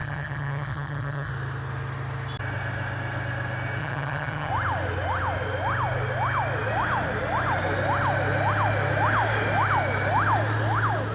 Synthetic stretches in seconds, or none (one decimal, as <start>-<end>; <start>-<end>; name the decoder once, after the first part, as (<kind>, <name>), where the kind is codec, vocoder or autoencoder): 0.0-1.3 (vocoder, HiFi-GAN); 3.8-4.5

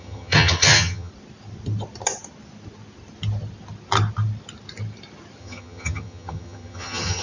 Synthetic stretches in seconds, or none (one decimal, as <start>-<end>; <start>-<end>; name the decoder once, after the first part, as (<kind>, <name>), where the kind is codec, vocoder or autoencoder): 0.0-1.1 (vocoder, HiFi-GAN); 5.4-7.2

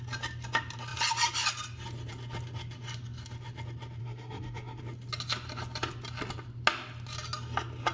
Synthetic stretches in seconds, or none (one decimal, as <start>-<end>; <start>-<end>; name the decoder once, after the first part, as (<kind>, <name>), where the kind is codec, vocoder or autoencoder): 4.0-4.8 (codec, SNAC)

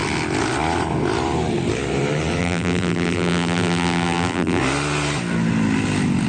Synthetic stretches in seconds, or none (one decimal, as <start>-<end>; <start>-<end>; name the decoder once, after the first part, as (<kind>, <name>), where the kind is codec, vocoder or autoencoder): 2.4-4.6 (vocoder, BigVGAN v2)

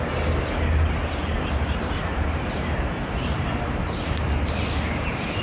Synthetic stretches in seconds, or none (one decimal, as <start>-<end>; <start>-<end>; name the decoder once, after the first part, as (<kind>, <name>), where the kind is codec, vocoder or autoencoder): 1.2-4.4 (vocoder, BigVGAN v2)

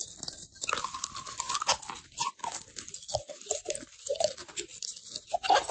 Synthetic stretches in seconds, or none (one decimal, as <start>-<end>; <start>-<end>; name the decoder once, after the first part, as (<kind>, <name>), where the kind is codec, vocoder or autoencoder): none

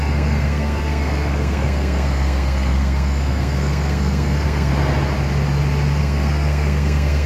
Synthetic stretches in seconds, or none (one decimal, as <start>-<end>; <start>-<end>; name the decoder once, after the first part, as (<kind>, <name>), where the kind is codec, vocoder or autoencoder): 0.0-4.7 (codec, SNAC); 6.0-7.3

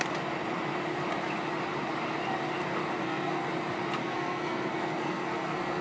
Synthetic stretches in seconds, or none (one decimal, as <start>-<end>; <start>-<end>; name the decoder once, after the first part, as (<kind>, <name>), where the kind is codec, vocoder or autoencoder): 3.0-3.5 (codec, SNAC); 4.0-5.8